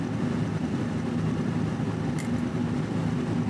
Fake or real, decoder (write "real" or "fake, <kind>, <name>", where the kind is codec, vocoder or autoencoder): real